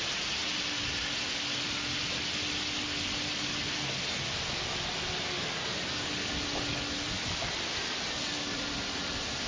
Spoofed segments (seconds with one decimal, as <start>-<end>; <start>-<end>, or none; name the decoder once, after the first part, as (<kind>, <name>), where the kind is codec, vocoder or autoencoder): none